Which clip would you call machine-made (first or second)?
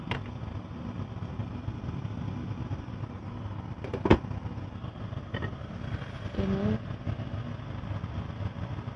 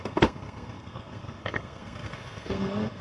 second